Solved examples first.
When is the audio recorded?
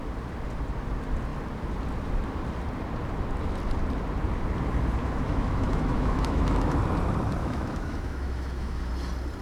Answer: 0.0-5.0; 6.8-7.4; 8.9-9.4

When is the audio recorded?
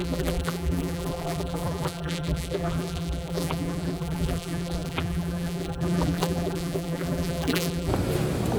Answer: 7.9-8.6